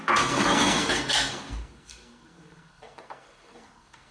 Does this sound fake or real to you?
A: fake